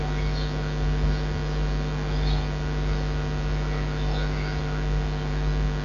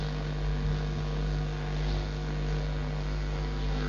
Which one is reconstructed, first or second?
second